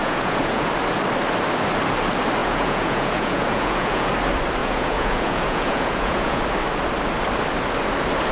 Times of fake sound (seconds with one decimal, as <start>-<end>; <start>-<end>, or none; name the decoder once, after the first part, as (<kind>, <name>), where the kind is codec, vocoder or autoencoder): 0.0-0.7 (vocoder, Vocos); 2.4-4.1; 4.6-6.4